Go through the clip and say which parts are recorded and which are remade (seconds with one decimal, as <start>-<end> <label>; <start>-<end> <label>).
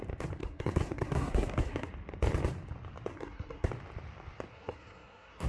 0.0-0.4 recorded; 0.4-1.9 remade; 1.9-3.1 recorded; 3.1-3.7 remade; 3.7-4.5 recorded; 4.5-5.5 remade